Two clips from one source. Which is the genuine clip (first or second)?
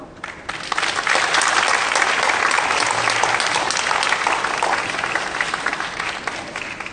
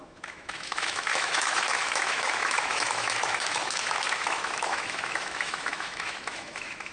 first